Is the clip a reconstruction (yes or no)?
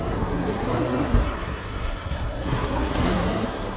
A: yes